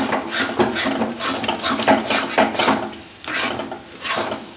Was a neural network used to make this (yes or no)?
no